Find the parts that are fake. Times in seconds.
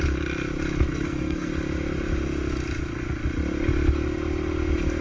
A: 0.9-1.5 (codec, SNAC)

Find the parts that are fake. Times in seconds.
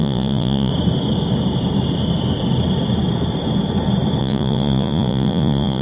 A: 0.0-0.7 (vocoder, Vocos); 4.2-5.8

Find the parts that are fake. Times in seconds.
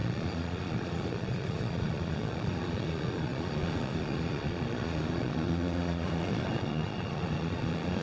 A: 0.0-8.0 (vocoder, Vocos)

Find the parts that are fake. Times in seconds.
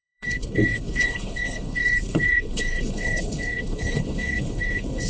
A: 0.0-5.1 (codec, HILCodec)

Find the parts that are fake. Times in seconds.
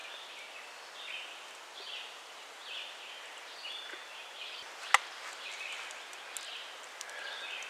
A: none